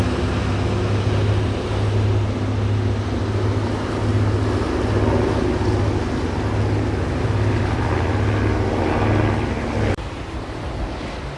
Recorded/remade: recorded